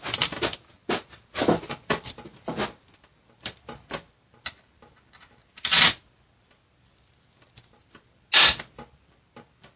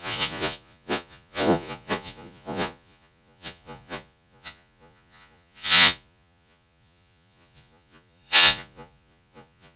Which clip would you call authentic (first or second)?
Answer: first